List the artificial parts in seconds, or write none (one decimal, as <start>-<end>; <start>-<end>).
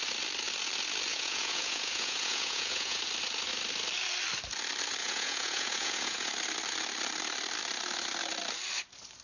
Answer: 1.1-3.0; 5.0-6.3